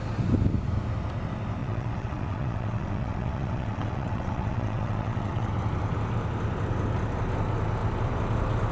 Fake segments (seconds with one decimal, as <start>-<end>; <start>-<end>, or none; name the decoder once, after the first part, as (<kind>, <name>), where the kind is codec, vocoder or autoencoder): 1.6-5.5 (vocoder, WaveNeXt)